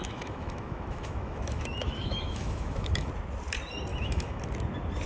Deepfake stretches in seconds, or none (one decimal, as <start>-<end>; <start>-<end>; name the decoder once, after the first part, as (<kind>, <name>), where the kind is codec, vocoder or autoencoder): 0.0-3.1 (autoencoder, DAC-VAE); 3.9-4.4